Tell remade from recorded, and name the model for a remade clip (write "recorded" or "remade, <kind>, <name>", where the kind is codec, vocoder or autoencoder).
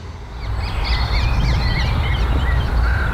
recorded